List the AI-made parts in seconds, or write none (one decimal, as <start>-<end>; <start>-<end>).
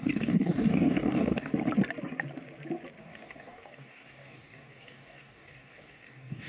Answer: 0.0-1.5; 3.0-6.5